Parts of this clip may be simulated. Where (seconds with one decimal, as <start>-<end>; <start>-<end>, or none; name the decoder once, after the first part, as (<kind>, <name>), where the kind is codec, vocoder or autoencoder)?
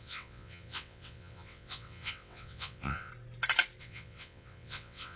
0.0-3.1 (vocoder, WaveNeXt); 3.8-5.2